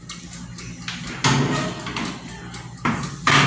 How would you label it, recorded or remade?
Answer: recorded